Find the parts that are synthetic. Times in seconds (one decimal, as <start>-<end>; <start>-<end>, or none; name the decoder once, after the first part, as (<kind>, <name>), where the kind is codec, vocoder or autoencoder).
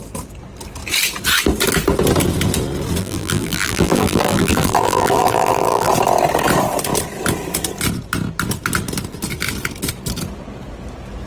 3.0-5.9 (vocoder, BigVGAN v2)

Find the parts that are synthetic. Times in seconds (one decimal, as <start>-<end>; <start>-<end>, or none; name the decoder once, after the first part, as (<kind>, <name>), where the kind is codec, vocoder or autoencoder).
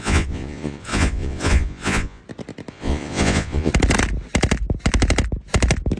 0.0-2.2 (vocoder, Vocos); 2.7-3.7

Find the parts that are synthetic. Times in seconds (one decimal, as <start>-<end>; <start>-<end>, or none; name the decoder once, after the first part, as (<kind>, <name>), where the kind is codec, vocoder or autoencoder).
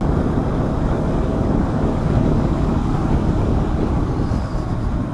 0.5-3.6 (codec, DAC)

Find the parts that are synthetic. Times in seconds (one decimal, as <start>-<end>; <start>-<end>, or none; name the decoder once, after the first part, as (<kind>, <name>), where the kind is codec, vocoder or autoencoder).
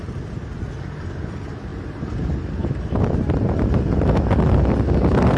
0.0-5.4 (vocoder, BigVGAN v2)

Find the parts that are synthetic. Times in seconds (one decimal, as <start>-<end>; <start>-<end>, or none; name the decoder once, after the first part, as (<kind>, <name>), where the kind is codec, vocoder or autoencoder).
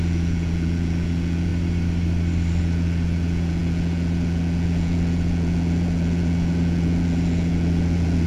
0.0-1.5 (vocoder, Vocos); 2.6-8.3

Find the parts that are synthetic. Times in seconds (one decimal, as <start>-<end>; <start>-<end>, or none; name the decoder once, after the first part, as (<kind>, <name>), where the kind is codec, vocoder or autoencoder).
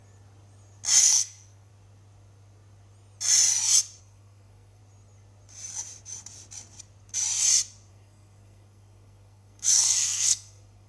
1.0-1.7 (codec, SNAC); 4.0-4.8; 7.9-10.9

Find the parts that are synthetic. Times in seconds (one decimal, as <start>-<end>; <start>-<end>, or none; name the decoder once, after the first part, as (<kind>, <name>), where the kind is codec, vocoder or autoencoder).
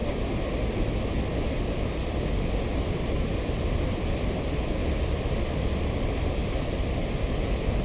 none